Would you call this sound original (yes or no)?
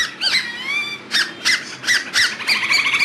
yes